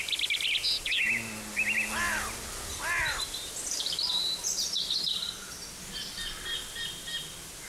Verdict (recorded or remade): recorded